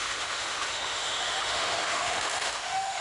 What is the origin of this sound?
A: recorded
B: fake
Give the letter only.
B